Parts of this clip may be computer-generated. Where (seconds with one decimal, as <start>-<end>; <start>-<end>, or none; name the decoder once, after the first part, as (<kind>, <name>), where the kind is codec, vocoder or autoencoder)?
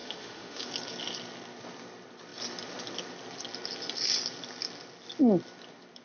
0.0-0.7 (autoencoder, DAC-VAE)